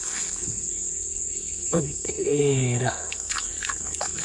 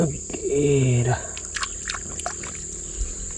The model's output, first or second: first